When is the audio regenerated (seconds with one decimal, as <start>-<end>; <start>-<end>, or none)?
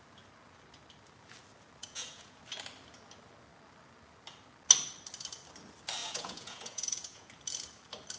1.8-2.4; 6.0-7.3